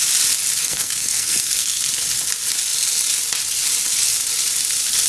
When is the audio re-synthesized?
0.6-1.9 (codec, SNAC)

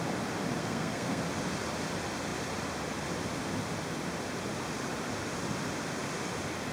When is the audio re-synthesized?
0.6-1.2 (codec, SNAC)

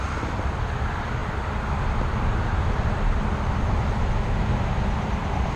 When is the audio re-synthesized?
none